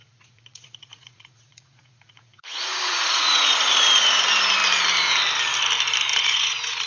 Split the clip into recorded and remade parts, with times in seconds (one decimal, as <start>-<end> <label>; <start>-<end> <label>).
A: 0.0-3.5 remade; 3.5-6.1 recorded; 6.1-6.9 remade